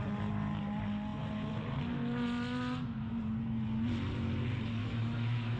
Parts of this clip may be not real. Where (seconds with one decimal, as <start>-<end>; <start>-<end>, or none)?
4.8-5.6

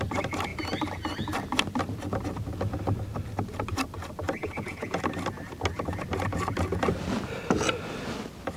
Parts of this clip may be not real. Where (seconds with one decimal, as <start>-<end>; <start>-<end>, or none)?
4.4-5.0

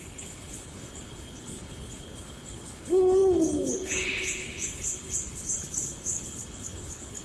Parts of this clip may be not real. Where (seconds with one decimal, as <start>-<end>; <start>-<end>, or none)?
0.0-7.2

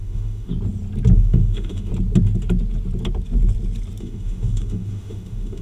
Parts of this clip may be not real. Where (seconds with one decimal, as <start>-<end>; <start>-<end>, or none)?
0.0-0.5; 1.1-1.9; 4.0-5.6

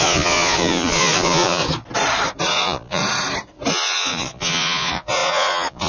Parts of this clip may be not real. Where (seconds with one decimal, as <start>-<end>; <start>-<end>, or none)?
0.0-1.6; 2.5-3.0; 3.7-5.9

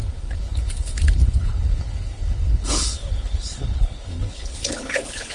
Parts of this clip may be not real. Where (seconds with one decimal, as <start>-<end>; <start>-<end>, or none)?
0.0-5.3

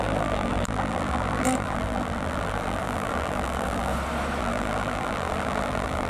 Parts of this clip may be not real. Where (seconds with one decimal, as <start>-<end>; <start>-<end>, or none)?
0.0-3.9; 4.4-6.1